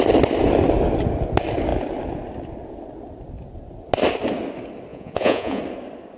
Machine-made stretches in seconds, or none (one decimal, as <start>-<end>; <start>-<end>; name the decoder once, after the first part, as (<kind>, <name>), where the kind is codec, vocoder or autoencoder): 4.9-5.6 (vocoder, Vocos)